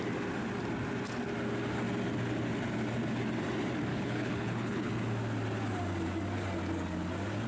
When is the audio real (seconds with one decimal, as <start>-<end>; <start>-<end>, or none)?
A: 0.0-3.9; 4.9-7.5